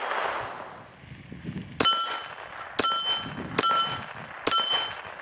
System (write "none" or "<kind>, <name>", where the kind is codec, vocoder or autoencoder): none